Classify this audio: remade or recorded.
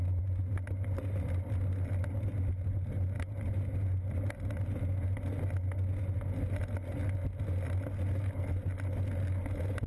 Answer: recorded